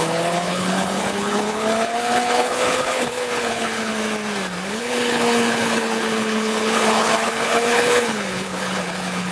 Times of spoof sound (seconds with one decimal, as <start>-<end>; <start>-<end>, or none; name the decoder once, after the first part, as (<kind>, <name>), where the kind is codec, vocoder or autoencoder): 0.0-3.9 (codec, HILCodec); 4.7-9.3